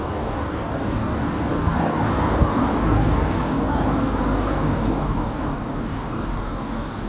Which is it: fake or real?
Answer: fake